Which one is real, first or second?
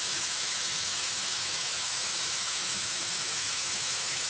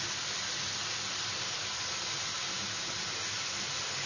second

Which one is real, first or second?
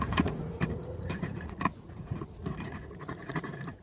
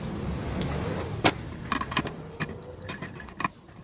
second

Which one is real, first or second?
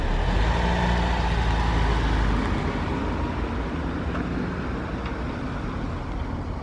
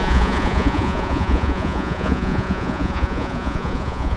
first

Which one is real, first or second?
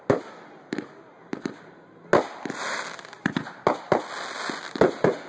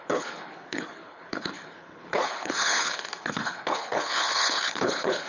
first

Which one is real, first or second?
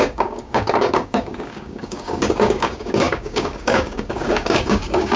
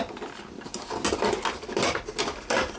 second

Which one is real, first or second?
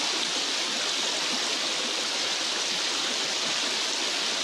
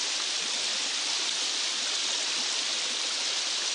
first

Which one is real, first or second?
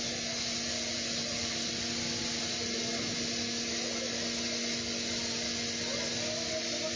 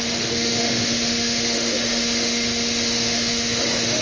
first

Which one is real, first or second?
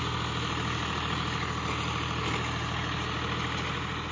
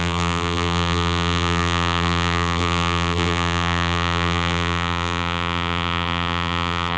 first